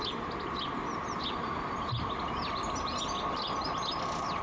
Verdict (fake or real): real